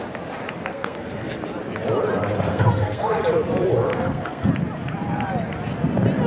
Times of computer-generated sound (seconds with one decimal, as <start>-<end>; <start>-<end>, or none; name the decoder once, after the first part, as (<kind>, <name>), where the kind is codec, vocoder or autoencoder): 0.7-1.3 (codec, SNAC); 2.5-3.2; 3.9-4.5